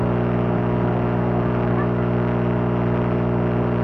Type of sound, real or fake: fake